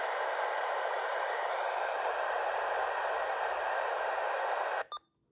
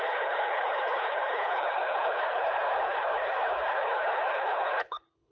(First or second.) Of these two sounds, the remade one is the second